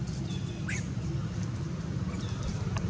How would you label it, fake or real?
fake